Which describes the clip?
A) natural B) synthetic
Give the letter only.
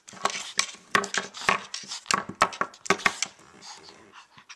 A